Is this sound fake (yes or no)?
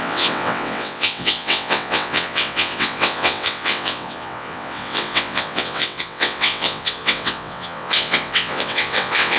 yes